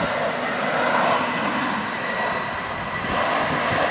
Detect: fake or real real